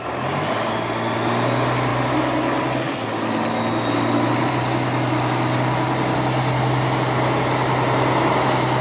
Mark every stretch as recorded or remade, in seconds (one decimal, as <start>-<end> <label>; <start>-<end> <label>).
0.0-8.8 recorded